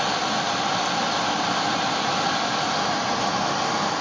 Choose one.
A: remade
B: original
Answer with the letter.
B